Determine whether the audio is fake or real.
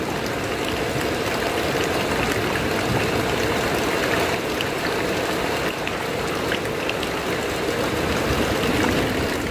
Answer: fake